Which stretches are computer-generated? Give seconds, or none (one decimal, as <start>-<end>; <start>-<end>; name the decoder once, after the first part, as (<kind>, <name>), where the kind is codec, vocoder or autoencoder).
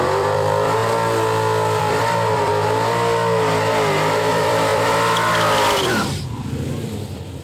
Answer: 0.0-0.8 (vocoder, BigVGAN v2); 1.8-2.5; 4.3-7.4